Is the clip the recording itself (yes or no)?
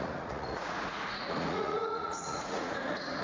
no